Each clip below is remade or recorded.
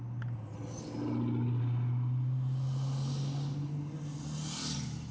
recorded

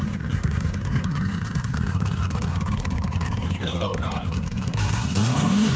remade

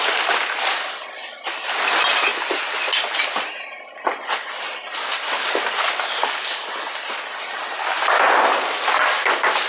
recorded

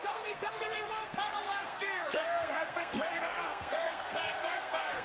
remade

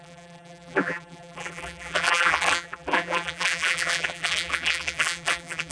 remade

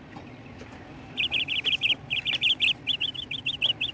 remade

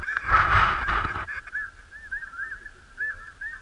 recorded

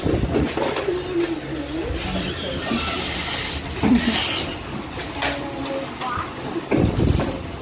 recorded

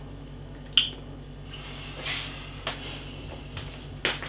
recorded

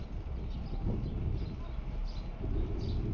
recorded